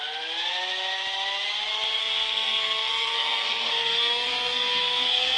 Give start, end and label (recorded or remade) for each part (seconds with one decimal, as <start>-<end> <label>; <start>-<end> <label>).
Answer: 0.0-2.0 recorded; 2.0-5.4 remade